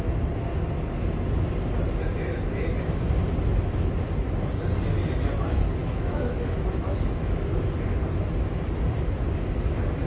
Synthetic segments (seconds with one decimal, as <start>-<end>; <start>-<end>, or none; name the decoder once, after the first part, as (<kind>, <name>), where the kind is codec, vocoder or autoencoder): 5.8-7.4 (autoencoder, DAC-VAE)